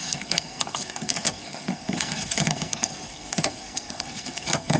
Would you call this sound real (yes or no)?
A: no